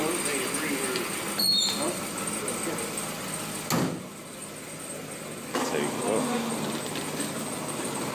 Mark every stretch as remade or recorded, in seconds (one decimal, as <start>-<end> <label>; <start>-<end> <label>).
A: 0.0-8.1 recorded